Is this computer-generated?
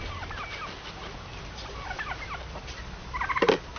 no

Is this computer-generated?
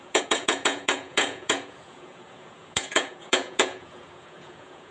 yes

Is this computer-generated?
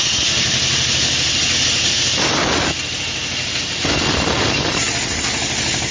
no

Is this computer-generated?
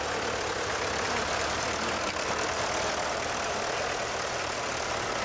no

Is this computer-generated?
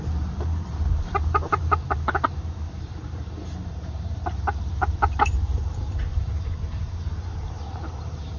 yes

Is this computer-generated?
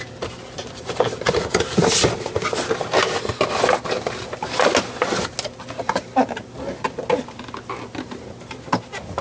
no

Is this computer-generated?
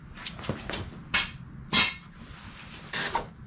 no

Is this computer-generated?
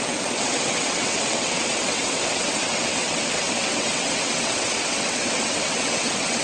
yes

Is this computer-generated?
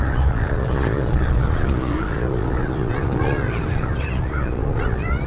yes